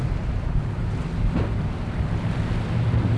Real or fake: real